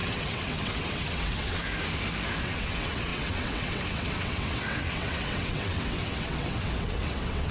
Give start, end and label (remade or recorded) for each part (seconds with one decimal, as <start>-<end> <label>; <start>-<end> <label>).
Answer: 0.0-1.6 remade; 1.6-2.4 recorded; 2.4-7.5 remade